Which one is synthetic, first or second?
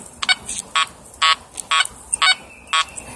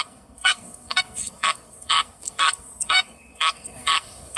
second